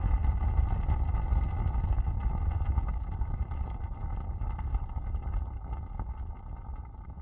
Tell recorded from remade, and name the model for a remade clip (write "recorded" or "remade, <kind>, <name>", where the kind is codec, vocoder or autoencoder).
recorded